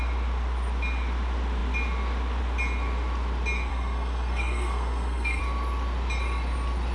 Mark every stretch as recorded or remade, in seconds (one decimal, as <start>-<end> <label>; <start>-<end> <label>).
0.0-3.7 recorded; 3.7-5.4 remade; 5.4-6.9 recorded